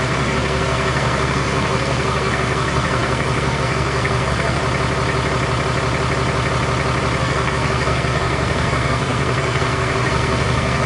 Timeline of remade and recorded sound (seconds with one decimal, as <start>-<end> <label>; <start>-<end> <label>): 0.0-4.6 remade; 4.6-7.2 recorded; 7.2-10.9 remade